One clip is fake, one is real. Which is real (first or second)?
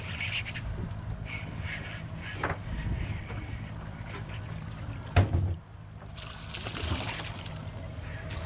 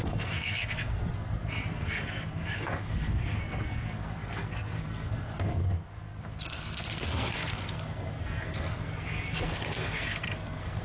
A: first